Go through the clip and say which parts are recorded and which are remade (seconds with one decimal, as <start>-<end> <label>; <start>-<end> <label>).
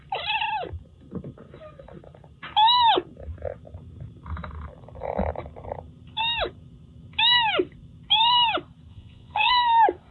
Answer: 0.0-8.9 recorded; 8.9-9.5 remade; 9.5-10.1 recorded